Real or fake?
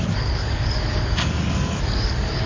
fake